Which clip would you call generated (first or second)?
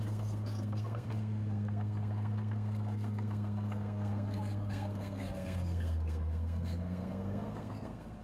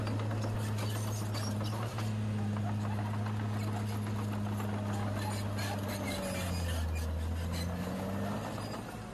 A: first